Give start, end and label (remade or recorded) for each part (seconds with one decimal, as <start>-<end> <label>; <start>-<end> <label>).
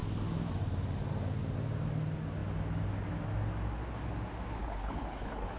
0.0-4.6 recorded; 4.6-5.6 remade